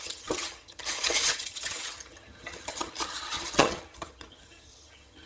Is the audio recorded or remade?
remade